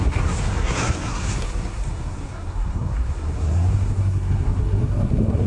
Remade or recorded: remade